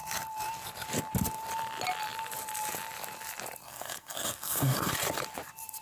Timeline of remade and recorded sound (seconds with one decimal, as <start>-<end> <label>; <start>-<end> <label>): 0.0-3.6 recorded; 3.6-4.9 remade; 4.9-5.8 recorded